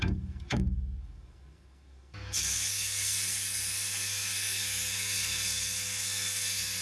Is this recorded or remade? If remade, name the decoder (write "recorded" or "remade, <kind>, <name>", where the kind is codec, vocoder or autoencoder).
remade, codec, SNAC